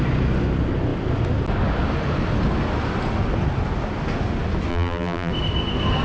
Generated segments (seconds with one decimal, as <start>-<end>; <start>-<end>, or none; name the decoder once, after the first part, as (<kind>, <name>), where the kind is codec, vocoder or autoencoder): 4.7-5.3 (vocoder, BigVGAN v2)